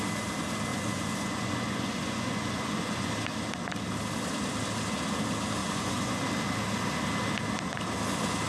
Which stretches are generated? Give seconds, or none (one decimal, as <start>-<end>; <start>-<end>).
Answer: 0.7-3.1; 5.6-6.2